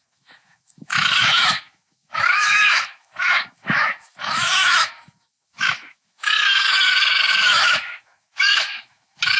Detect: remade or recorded remade